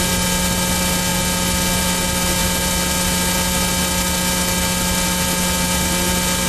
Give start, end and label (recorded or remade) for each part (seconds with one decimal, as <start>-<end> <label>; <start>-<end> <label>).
0.0-6.5 recorded